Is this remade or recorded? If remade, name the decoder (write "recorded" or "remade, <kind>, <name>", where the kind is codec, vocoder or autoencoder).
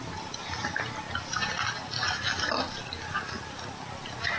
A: recorded